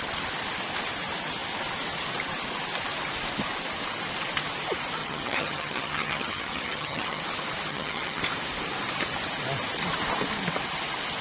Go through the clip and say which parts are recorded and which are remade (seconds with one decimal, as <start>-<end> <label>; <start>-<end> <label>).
0.0-5.0 recorded; 5.0-7.2 remade; 7.2-7.7 recorded; 7.7-8.2 remade; 8.2-11.2 recorded